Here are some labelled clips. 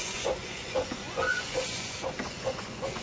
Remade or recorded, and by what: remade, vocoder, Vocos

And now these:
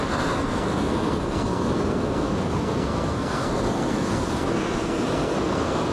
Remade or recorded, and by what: remade, codec, SNAC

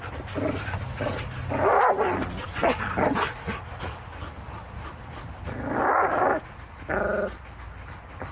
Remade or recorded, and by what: recorded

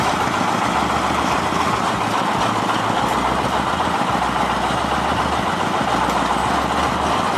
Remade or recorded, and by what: recorded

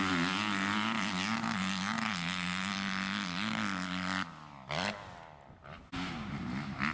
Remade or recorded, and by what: recorded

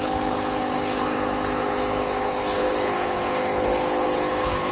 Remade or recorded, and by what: remade, codec, HILCodec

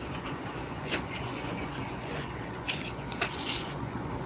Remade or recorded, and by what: remade, vocoder, Vocos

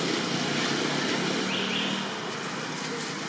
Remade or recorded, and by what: recorded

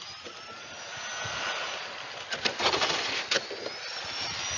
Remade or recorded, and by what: recorded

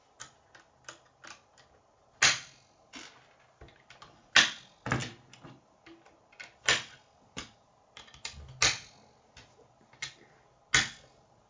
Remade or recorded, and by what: recorded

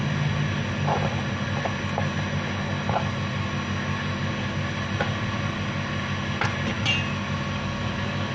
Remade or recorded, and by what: recorded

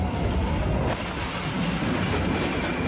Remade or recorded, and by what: recorded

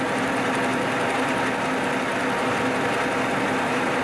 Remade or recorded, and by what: recorded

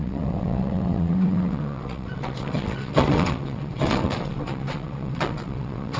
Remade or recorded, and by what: remade, vocoder, WaveNeXt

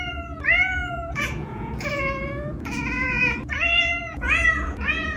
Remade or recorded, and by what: remade, vocoder, Vocos